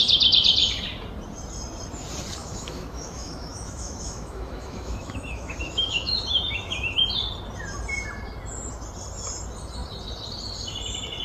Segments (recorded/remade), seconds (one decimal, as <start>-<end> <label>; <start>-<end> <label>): 0.0-2.4 recorded; 2.4-7.0 remade; 7.0-11.2 recorded